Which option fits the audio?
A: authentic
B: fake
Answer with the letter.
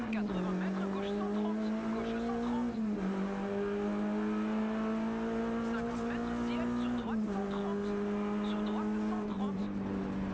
A